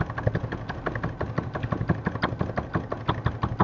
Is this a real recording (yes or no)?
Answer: yes